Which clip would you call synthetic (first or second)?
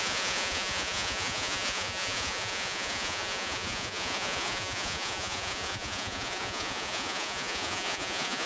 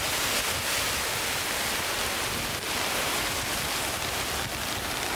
first